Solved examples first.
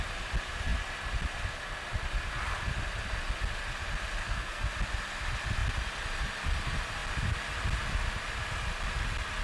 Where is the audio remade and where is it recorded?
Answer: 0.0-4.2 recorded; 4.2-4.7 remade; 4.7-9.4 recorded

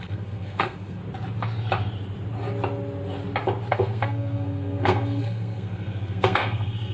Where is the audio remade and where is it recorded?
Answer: 0.0-1.0 remade; 1.0-3.7 recorded; 3.7-6.9 remade

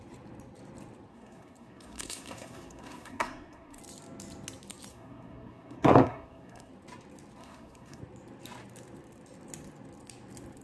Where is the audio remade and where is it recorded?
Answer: 0.0-1.1 recorded; 1.1-3.8 remade; 3.8-4.9 recorded; 4.9-6.7 remade; 6.7-7.4 recorded; 7.4-8.0 remade; 8.0-10.6 recorded

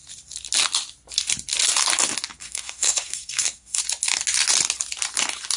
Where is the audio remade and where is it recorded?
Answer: 0.0-2.4 recorded; 2.4-3.8 remade; 3.8-5.6 recorded

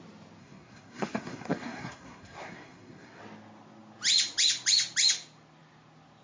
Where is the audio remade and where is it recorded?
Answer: 0.0-0.4 recorded; 0.4-3.2 remade; 3.2-6.2 recorded

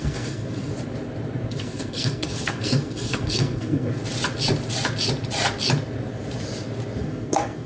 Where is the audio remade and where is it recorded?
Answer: 0.0-0.7 remade; 0.7-1.5 recorded; 1.5-4.0 remade; 4.0-7.0 recorded; 7.0-7.7 remade

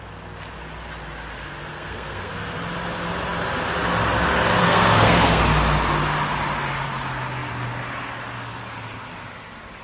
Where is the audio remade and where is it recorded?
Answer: 0.0-1.7 recorded; 1.7-2.3 remade; 2.3-4.6 recorded; 4.6-5.4 remade; 5.4-9.8 recorded

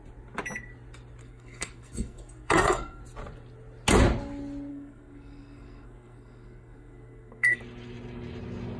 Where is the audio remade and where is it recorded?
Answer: 0.0-1.2 recorded; 1.2-3.0 remade; 3.0-4.7 recorded; 4.7-7.6 remade; 7.6-8.8 recorded